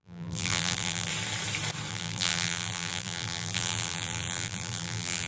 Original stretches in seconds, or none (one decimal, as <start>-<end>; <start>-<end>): 1.1-1.9